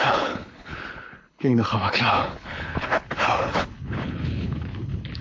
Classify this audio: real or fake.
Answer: fake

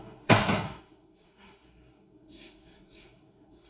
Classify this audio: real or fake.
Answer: fake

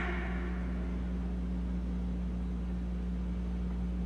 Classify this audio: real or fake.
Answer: real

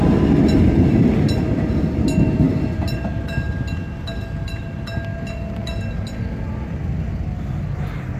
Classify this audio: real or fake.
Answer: real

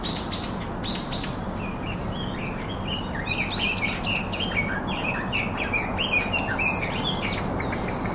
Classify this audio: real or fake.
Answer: real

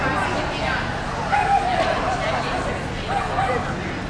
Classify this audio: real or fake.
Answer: real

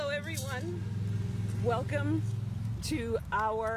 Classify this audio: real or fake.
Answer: real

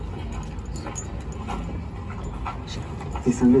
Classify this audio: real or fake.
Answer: real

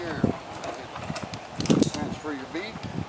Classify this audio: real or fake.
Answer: real